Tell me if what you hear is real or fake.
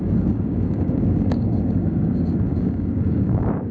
fake